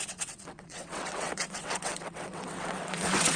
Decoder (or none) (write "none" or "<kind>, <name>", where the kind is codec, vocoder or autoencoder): vocoder, WaveNeXt